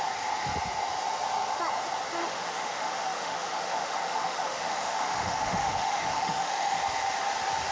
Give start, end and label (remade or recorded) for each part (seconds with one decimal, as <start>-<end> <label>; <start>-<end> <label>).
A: 0.0-2.2 recorded; 2.2-6.8 remade; 6.8-7.7 recorded